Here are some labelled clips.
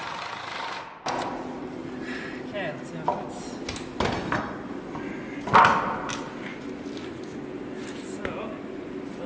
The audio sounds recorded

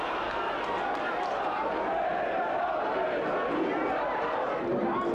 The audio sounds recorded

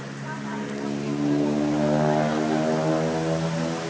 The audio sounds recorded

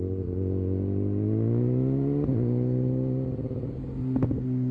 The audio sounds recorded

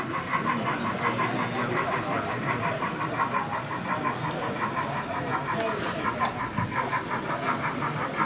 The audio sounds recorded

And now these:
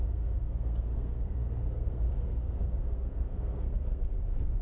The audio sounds remade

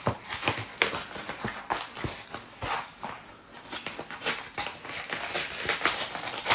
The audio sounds recorded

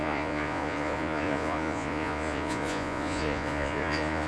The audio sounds remade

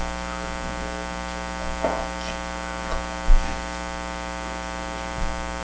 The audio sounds recorded